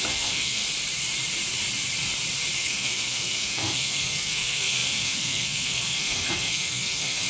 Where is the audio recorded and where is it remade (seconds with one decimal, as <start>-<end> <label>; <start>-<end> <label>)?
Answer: 0.0-0.6 remade; 0.6-2.6 recorded; 2.6-7.3 remade